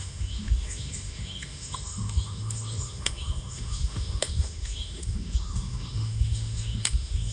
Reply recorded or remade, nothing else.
remade